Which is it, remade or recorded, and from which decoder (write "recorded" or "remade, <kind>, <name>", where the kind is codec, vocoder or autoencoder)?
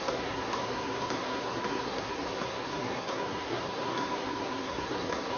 remade, codec, SNAC